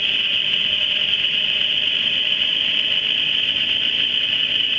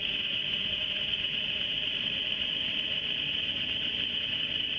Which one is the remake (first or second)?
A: second